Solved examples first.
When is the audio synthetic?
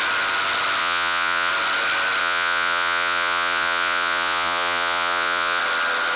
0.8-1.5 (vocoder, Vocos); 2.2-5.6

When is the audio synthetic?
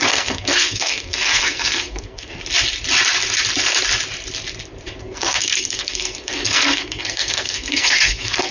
0.0-2.4 (codec, SNAC); 5.0-8.5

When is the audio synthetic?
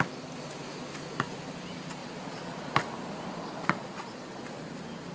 2.0-2.7 (vocoder, Vocos); 3.6-4.5